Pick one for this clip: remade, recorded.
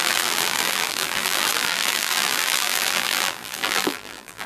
remade